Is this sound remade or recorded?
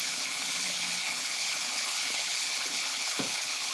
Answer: remade